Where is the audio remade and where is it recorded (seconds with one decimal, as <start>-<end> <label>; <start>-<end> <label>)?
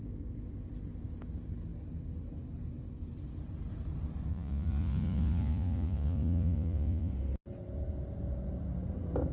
0.0-4.3 recorded; 4.3-7.1 remade; 7.1-9.3 recorded